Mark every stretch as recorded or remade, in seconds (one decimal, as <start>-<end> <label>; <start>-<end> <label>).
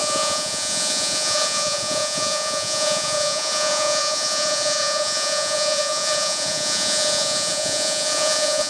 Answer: 0.0-8.7 remade